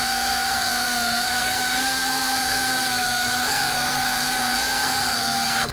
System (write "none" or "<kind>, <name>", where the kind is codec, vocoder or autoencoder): codec, SNAC